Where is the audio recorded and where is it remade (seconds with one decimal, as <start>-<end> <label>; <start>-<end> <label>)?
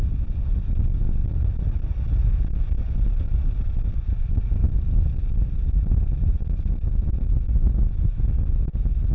0.0-9.1 recorded